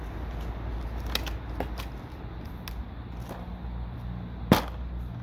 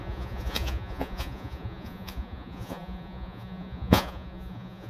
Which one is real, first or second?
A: first